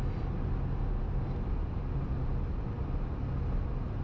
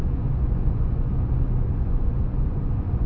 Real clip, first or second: first